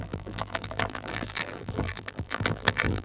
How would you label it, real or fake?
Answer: fake